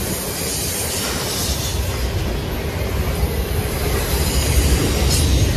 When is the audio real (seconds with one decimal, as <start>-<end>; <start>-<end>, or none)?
0.0-5.6